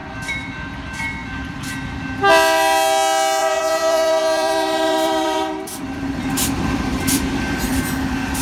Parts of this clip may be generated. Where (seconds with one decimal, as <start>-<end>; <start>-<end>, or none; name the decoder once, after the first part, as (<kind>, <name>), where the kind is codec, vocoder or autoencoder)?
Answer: 0.0-0.7 (vocoder, BigVGAN v2); 1.2-1.7; 3.4-7.8